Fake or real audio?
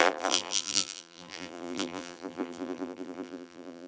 fake